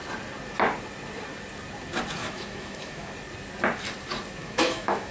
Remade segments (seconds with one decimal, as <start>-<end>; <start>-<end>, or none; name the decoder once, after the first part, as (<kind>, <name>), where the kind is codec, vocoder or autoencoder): 2.2-3.1 (autoencoder, DAC-VAE); 4.4-5.1